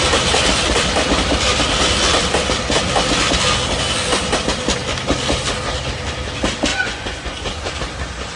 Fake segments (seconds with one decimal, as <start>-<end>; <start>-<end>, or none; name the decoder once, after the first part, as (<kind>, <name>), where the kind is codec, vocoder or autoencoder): 6.7-7.7 (vocoder, Vocos)